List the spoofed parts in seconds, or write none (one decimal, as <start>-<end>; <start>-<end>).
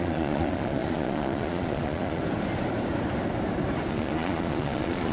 0.0-2.2; 3.9-5.1